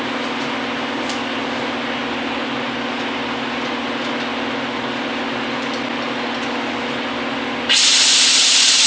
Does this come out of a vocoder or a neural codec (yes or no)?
no